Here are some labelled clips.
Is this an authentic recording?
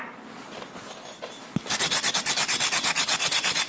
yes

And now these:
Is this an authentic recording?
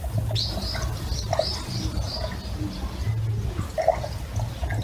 yes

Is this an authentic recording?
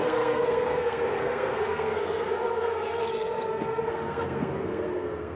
no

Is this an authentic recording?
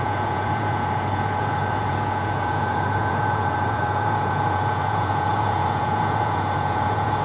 no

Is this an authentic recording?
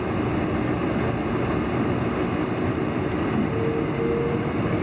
yes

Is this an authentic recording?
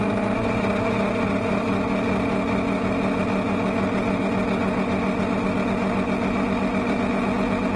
yes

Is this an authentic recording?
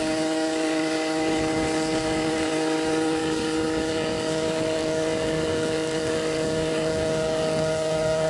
no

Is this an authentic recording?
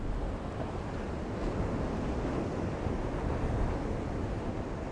yes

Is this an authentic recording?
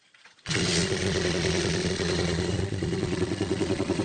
no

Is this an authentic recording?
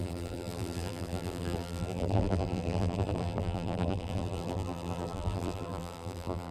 no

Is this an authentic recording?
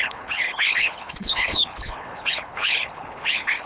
no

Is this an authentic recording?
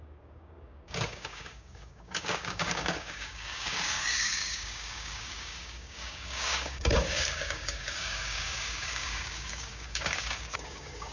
no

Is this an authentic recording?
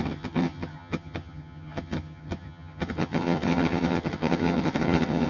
no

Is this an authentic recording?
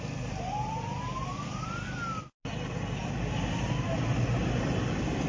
yes